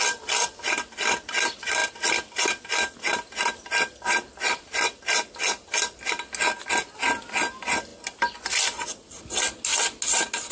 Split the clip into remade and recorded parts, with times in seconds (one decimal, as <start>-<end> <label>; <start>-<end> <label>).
0.0-10.5 recorded